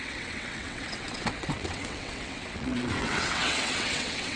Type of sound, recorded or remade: remade